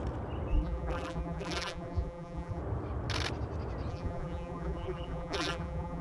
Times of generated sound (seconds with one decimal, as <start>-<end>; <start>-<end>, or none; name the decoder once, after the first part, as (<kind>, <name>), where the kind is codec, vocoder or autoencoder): 0.5-2.6 (vocoder, BigVGAN v2); 3.9-6.0